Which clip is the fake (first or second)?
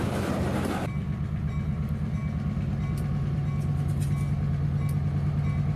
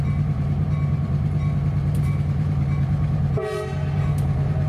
second